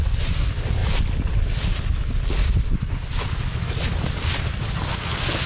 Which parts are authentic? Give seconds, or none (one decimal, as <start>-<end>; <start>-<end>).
0.0-5.5